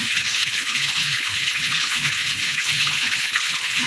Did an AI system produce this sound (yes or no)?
yes